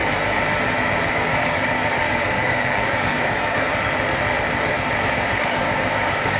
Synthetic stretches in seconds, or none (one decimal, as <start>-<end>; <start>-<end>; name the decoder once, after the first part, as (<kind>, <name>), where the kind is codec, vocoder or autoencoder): 1.1-3.7 (codec, DAC); 5.0-6.4